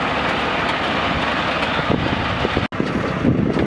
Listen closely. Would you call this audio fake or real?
real